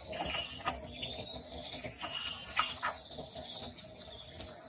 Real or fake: real